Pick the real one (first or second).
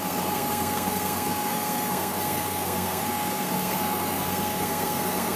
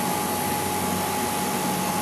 second